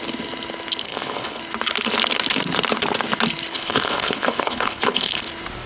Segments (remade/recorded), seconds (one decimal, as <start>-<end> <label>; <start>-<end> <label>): 0.0-0.8 recorded; 0.8-1.4 remade; 1.4-3.5 recorded; 3.5-5.3 remade; 5.3-5.7 recorded